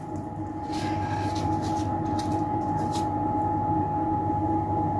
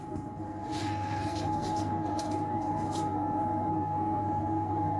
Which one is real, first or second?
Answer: first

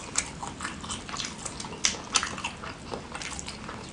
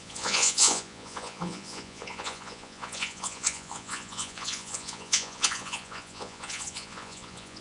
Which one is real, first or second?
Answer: first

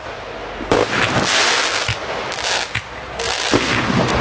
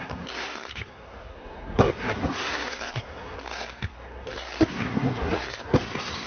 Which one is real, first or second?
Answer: first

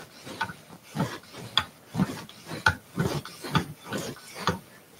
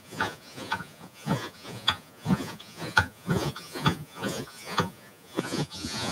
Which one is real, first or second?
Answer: first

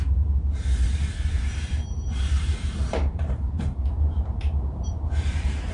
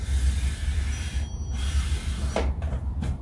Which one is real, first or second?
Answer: second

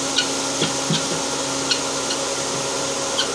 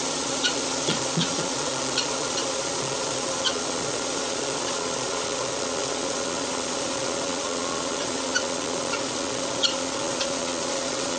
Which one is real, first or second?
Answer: first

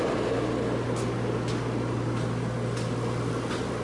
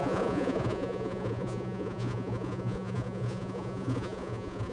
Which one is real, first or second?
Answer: first